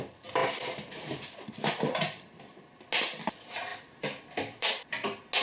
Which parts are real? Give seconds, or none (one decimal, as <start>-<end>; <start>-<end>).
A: 0.0-0.4; 2.9-3.7; 4.7-5.4